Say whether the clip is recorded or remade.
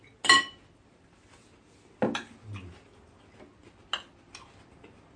recorded